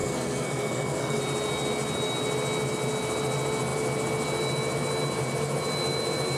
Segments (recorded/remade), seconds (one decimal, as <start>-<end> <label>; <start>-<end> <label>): 0.0-1.2 remade; 1.2-6.4 recorded

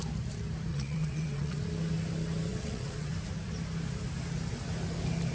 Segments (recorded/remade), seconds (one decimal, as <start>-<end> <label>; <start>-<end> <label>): 0.0-0.7 recorded; 0.7-1.6 remade; 1.6-2.5 recorded; 2.5-3.1 remade; 3.1-5.3 recorded

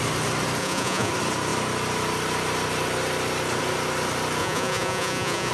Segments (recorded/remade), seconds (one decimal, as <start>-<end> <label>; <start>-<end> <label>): 0.0-0.6 recorded; 0.6-1.1 remade; 1.1-4.4 recorded; 4.4-5.5 remade

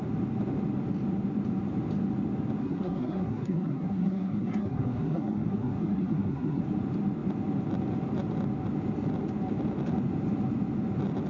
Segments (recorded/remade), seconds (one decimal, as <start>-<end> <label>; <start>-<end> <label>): 0.0-2.6 recorded; 2.6-6.6 remade; 6.6-11.3 recorded